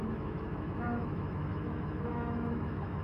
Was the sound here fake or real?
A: fake